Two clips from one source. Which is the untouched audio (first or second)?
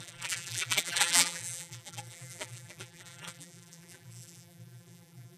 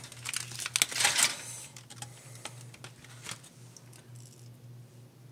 second